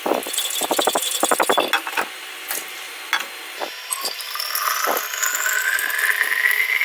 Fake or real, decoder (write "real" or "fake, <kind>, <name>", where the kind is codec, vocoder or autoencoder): real